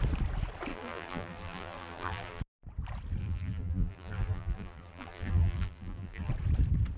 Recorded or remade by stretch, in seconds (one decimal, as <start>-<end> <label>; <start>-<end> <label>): 0.0-0.7 recorded; 0.7-2.4 remade; 2.4-3.2 recorded; 3.2-6.3 remade; 6.3-7.0 recorded